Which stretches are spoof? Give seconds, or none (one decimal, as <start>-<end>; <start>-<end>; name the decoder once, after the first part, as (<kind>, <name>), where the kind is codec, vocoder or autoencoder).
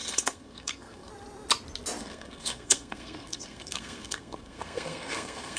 0.0-1.1 (codec, SNAC); 2.0-5.6